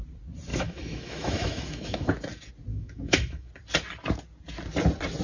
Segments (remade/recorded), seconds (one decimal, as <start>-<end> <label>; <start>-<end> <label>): 0.0-0.5 recorded; 0.5-2.1 remade; 2.1-2.7 recorded; 2.7-3.5 remade; 3.5-5.2 recorded